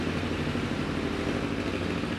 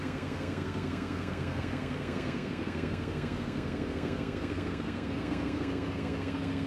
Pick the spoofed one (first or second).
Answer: second